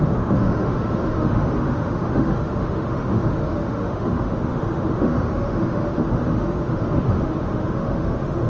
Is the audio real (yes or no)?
no